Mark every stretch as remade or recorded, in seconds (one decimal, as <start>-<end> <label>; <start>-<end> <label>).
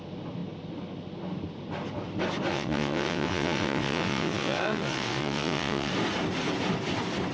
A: 0.0-2.5 recorded; 2.5-5.9 remade; 5.9-7.3 recorded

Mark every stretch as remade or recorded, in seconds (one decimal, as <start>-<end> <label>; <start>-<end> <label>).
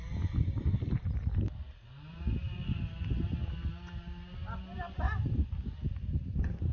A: 0.0-6.7 recorded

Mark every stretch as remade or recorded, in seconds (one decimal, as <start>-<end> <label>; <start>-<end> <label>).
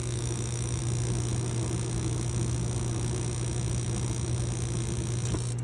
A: 0.0-0.8 remade; 0.8-5.6 recorded